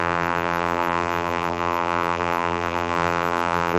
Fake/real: fake